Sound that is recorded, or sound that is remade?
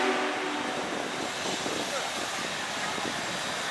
recorded